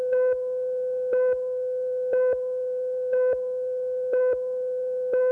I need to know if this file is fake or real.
real